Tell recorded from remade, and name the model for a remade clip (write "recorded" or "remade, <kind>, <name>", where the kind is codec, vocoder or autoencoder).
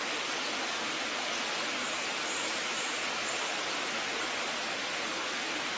recorded